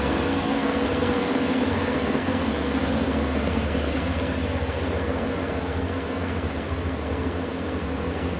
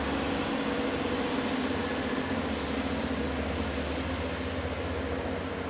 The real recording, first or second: second